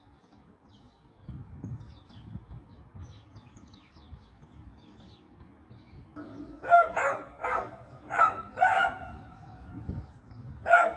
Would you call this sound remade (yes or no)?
yes